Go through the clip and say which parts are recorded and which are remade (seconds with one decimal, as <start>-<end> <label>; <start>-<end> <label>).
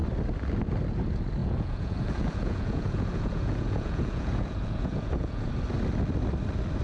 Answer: 0.0-1.4 recorded; 1.4-5.5 remade; 5.5-6.8 recorded